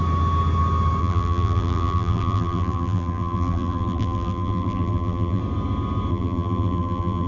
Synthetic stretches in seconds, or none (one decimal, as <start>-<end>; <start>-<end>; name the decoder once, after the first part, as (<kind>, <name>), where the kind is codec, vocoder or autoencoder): 1.0-5.4 (vocoder, BigVGAN v2); 6.1-7.3